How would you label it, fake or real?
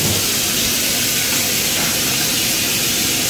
real